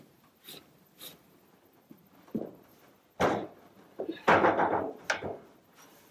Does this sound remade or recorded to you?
recorded